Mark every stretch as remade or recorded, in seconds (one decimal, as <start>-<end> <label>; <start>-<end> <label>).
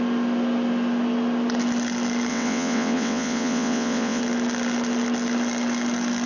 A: 0.0-2.3 recorded; 2.3-4.2 remade; 4.2-6.3 recorded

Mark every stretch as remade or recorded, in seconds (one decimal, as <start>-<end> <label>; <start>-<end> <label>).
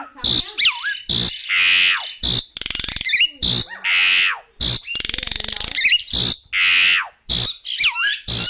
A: 0.0-8.5 recorded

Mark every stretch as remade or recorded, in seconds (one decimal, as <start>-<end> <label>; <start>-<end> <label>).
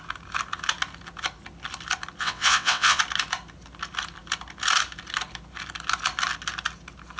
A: 0.0-2.2 recorded; 2.2-3.0 remade; 3.0-7.2 recorded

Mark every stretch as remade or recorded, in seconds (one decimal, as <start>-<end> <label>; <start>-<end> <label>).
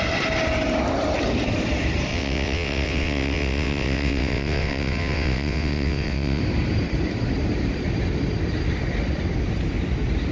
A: 0.0-2.1 recorded; 2.1-6.4 remade; 6.4-10.3 recorded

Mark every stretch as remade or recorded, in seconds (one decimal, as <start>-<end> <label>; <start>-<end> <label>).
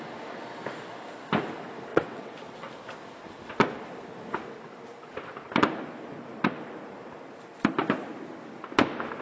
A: 0.0-1.9 recorded; 1.9-2.7 remade; 2.7-9.2 recorded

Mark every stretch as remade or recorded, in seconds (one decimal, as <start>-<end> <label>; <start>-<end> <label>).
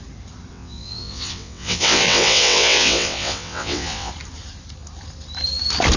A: 0.0-0.5 recorded; 0.5-4.1 remade; 4.1-6.0 recorded